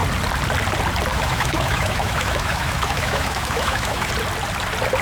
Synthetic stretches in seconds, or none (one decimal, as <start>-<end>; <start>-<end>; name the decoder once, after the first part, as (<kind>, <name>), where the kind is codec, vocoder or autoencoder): 1.1-4.1 (autoencoder, DAC-VAE)